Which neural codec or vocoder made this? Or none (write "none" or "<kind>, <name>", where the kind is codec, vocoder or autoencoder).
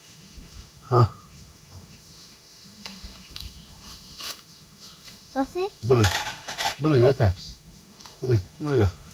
autoencoder, DAC-VAE